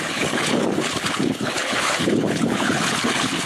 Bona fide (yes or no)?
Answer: no